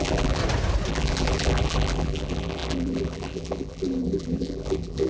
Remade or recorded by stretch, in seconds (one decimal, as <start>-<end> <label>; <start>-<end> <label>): 0.0-0.4 remade; 0.4-0.9 recorded; 0.9-5.1 remade